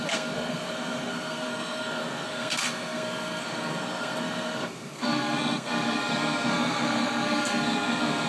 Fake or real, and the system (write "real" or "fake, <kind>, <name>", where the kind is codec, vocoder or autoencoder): fake, codec, SNAC